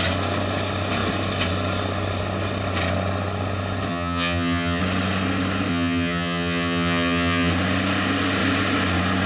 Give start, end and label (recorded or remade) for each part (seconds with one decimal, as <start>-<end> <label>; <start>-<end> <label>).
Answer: 0.0-3.9 recorded; 3.9-4.8 remade; 4.8-5.7 recorded; 5.7-7.5 remade; 7.5-9.3 recorded